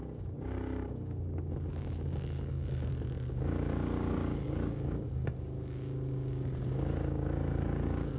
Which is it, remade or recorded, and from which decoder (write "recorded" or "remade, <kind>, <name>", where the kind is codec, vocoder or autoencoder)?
remade, codec, DAC